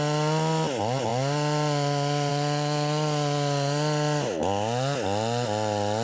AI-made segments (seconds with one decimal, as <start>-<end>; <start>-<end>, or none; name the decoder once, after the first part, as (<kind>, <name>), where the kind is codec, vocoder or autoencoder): none